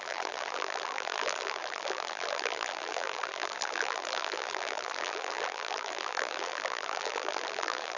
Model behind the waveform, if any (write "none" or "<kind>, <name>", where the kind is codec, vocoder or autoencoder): vocoder, BigVGAN v2